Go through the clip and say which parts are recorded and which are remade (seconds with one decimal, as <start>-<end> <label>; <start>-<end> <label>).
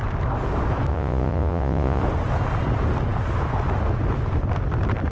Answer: 0.0-0.9 recorded; 0.9-2.0 remade; 2.0-5.1 recorded